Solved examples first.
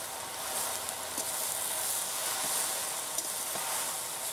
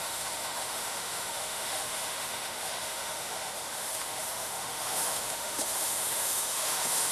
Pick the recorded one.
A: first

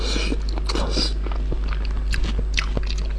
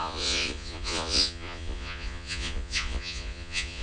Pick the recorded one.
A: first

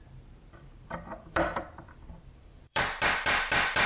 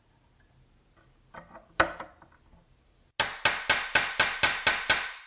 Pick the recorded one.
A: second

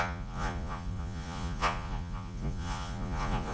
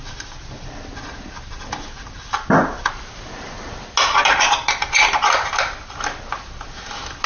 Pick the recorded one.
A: second